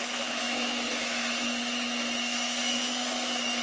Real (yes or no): no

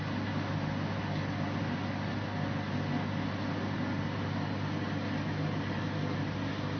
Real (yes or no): yes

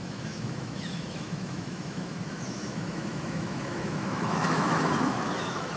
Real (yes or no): no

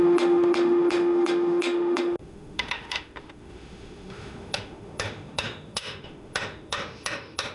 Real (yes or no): no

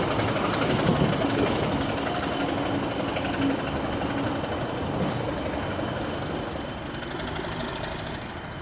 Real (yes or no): yes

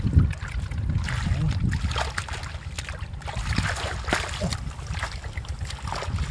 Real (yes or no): yes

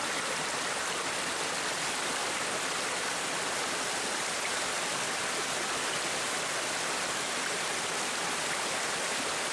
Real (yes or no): yes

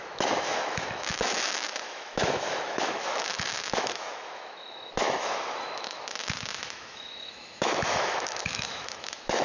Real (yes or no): no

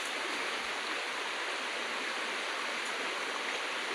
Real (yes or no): yes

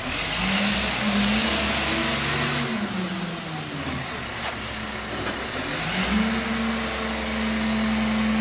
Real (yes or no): yes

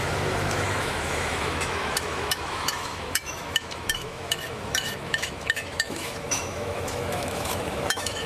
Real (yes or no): no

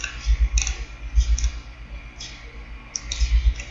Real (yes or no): yes